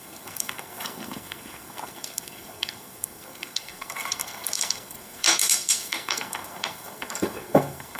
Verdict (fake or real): fake